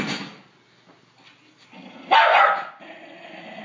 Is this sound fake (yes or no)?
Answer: no